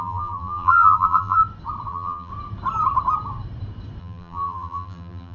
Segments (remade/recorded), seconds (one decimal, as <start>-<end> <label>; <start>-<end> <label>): 0.0-1.4 remade; 1.4-1.9 recorded; 1.9-2.3 remade; 2.3-4.0 recorded; 4.0-5.3 remade